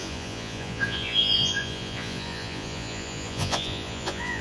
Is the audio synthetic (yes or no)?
yes